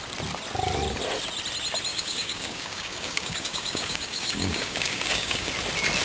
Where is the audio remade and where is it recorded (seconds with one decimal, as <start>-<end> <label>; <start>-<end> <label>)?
0.0-1.9 recorded; 1.9-5.5 remade; 5.5-6.0 recorded